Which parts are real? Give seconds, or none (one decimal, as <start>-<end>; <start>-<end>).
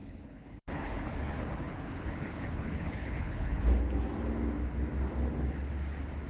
3.6-6.3